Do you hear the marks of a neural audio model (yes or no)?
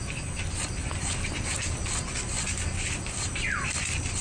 no